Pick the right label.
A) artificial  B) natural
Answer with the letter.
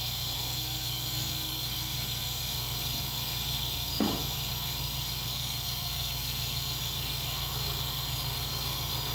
A